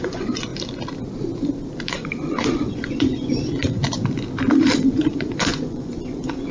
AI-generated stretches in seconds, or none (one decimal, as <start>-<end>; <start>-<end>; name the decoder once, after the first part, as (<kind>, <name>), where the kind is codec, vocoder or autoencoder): 0.0-0.5 (vocoder, Vocos); 1.9-3.8; 5.1-6.5